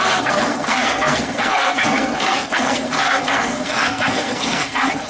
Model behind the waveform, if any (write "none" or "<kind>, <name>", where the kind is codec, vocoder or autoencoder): codec, SNAC